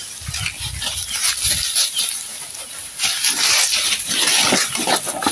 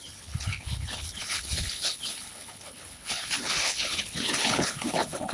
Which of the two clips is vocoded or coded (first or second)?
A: second